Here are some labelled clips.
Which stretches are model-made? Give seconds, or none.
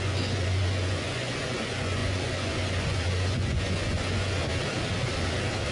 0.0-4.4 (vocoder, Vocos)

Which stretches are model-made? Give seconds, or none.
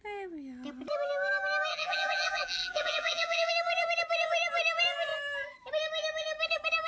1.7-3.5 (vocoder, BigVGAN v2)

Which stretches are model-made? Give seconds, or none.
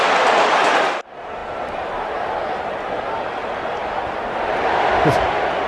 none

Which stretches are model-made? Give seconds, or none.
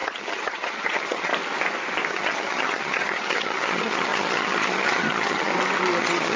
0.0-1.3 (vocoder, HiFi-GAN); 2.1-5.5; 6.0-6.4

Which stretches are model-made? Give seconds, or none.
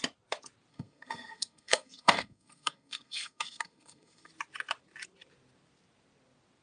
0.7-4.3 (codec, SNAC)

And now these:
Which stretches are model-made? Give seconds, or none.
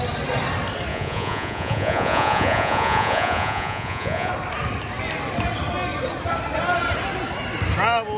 0.9-4.3 (vocoder, Vocos)